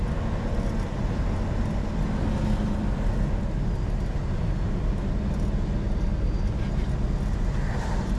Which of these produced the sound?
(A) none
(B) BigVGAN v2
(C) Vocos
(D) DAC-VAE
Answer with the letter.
A